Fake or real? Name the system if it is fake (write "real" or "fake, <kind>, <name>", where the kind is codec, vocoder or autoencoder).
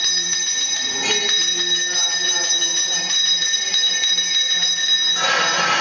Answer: real